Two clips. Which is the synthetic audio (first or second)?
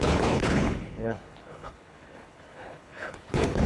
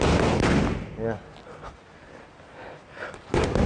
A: first